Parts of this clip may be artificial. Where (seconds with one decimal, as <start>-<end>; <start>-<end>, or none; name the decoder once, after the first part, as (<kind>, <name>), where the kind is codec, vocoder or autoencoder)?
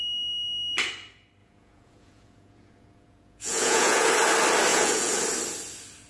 1.4-4.1 (vocoder, Vocos); 4.7-5.2